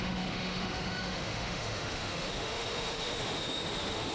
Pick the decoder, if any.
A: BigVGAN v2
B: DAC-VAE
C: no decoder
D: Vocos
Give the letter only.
B